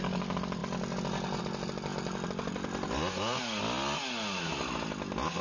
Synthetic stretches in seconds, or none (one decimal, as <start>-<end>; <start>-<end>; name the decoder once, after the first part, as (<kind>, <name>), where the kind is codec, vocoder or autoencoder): none

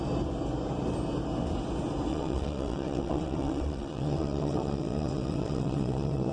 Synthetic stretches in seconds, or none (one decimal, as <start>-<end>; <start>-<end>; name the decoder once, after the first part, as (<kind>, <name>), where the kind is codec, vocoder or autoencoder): 2.1-6.3 (vocoder, WaveNeXt)

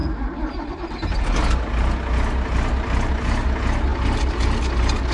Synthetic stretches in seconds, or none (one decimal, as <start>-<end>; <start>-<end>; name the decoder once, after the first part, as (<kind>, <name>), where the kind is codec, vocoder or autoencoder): none

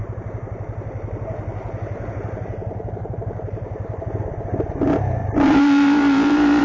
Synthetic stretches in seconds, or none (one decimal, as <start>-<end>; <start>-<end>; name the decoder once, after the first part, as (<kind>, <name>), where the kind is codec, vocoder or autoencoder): 0.0-4.0 (vocoder, BigVGAN v2); 5.2-6.6

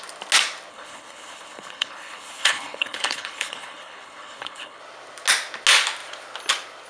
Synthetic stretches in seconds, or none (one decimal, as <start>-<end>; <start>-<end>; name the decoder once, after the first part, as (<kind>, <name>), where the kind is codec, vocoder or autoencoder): 0.7-4.8 (codec, HILCodec)

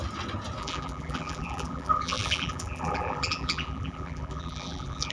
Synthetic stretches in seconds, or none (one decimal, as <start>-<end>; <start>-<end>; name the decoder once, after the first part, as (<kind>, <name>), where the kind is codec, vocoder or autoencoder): 0.6-5.1 (vocoder, BigVGAN v2)